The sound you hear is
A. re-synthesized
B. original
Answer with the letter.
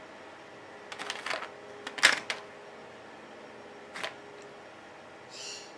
B